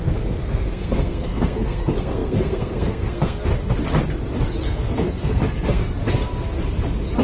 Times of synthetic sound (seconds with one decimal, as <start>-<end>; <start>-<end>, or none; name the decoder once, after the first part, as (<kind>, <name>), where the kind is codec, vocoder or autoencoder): 0.0-3.5 (codec, SNAC); 4.6-6.0